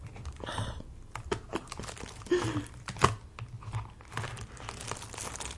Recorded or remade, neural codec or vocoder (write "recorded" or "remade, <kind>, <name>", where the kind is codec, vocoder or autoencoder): recorded